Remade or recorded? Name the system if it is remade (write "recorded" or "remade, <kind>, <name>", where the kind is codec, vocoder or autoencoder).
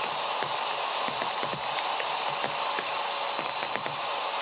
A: recorded